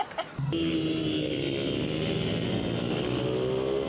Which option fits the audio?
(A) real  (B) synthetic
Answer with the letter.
A